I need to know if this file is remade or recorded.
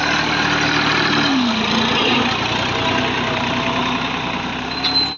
recorded